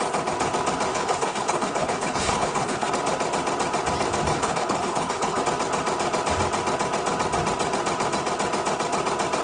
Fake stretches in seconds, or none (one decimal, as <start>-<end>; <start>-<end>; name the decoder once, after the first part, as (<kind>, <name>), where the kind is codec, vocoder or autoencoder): 0.9-2.9 (codec, HILCodec); 4.3-5.4